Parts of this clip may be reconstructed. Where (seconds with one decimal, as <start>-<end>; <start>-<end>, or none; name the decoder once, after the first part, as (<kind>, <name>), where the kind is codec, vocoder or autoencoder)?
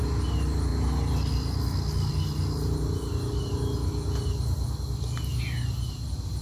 none